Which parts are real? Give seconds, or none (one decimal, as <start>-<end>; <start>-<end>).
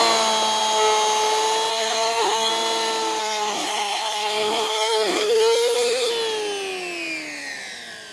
0.0-1.7; 2.5-3.2; 6.1-8.1